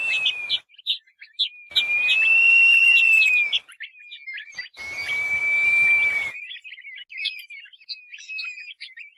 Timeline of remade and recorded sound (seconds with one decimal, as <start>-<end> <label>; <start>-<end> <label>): 0.0-9.2 recorded